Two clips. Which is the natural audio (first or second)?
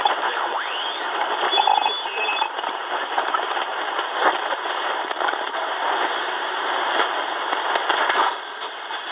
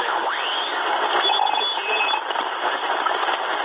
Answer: second